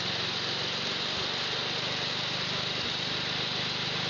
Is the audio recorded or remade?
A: recorded